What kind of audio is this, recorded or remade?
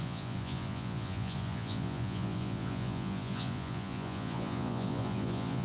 remade